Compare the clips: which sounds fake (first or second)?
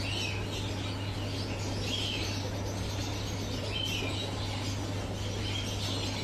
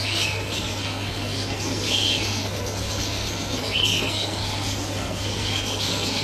second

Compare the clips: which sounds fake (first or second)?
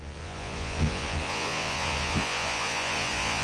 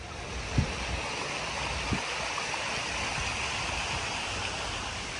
first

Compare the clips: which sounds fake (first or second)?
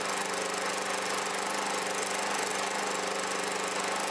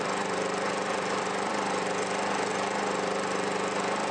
second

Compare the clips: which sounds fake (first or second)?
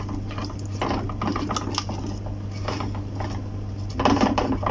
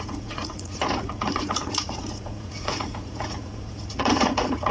second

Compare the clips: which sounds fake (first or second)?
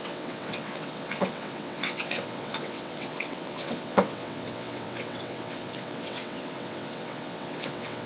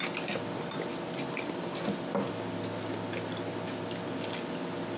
first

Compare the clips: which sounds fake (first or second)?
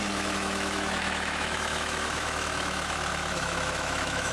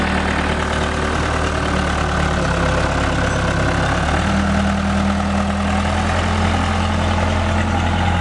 first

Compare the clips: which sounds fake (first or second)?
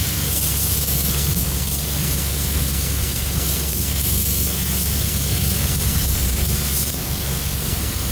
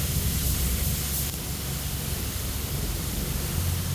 first